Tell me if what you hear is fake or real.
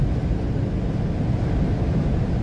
real